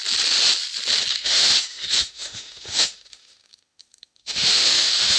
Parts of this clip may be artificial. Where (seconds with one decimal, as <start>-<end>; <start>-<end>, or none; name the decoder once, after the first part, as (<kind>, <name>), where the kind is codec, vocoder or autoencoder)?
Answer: 1.1-5.2 (autoencoder, DAC-VAE)